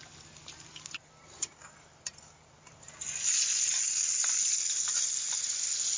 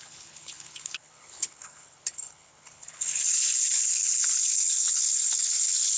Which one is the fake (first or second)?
second